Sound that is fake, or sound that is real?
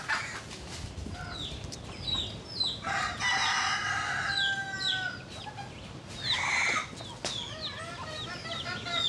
real